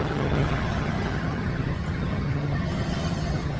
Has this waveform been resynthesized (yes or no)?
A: yes